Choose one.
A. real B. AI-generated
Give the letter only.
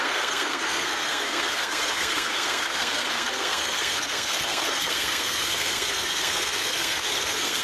B